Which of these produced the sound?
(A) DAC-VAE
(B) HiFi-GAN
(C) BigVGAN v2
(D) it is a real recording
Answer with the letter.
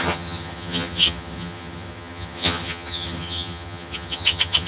B